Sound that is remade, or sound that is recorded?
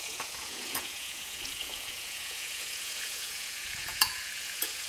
remade